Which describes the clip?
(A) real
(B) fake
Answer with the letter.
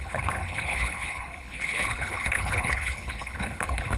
B